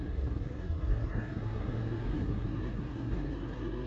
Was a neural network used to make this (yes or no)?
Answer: yes